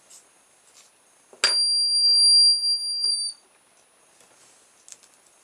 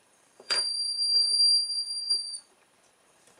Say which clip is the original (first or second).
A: first